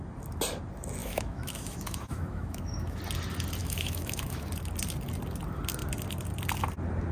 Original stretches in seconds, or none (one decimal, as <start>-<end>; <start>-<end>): 0.0-1.0; 3.0-3.6; 4.5-7.1